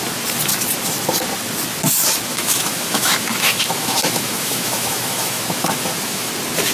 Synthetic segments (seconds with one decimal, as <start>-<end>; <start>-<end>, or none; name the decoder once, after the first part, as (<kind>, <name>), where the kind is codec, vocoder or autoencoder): 2.3-6.3 (autoencoder, DAC-VAE)